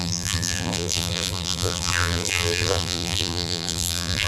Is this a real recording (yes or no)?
no